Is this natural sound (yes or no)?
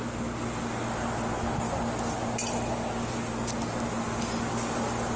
yes